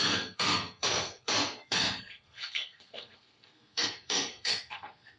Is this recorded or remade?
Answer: remade